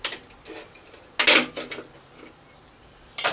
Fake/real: real